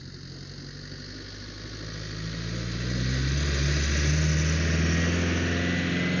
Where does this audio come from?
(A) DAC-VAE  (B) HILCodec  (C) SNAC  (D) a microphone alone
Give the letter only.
D